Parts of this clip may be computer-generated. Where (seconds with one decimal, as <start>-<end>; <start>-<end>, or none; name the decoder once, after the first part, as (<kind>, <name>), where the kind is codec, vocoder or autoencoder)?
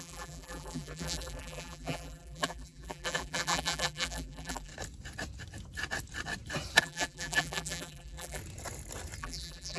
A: 0.0-4.7 (vocoder, BigVGAN v2); 6.8-8.4; 9.2-9.8